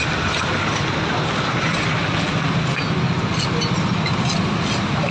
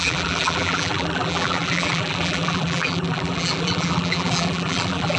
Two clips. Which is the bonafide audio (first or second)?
first